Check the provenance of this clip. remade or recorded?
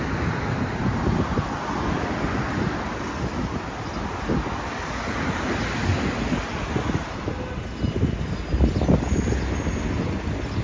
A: recorded